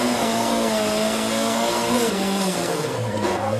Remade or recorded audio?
remade